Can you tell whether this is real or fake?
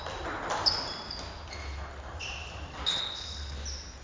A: real